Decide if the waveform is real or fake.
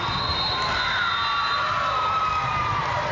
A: real